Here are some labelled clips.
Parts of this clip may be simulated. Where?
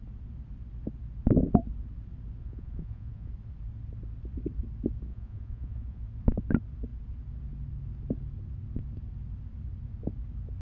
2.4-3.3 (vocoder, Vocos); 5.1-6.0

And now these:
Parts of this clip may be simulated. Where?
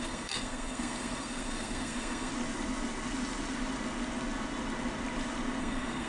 0.0-2.3 (codec, SNAC); 5.6-6.1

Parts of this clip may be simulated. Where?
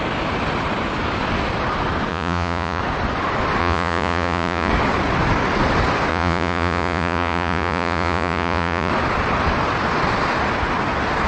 2.1-2.8 (vocoder, Vocos); 3.6-4.7; 6.1-8.9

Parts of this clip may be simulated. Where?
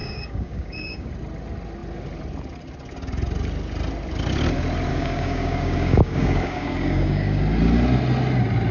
0.0-1.1 (codec, DAC); 4.9-7.4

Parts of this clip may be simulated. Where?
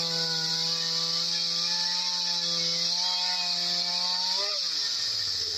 none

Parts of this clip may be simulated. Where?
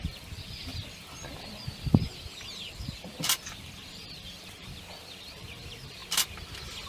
0.0-6.0 (vocoder, BigVGAN v2)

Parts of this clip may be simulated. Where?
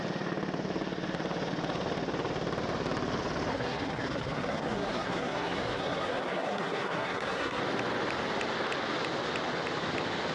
3.5-7.6 (codec, SNAC)